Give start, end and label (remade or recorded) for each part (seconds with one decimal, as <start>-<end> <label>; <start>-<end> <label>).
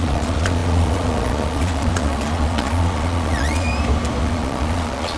0.0-3.7 remade; 3.7-4.2 recorded; 4.2-5.2 remade